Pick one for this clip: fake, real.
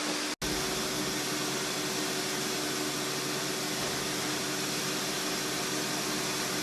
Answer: real